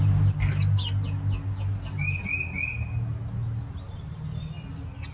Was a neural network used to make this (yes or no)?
no